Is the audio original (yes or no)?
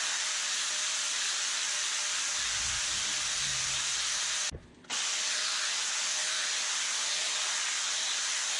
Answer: yes